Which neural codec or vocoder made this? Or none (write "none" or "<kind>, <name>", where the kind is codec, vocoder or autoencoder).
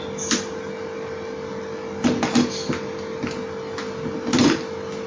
none